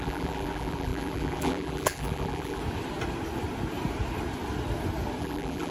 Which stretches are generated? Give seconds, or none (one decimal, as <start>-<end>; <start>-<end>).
0.0-2.6; 5.2-5.7